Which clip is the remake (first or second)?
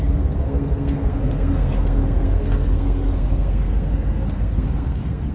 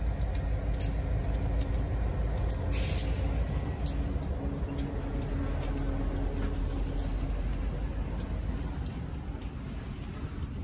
first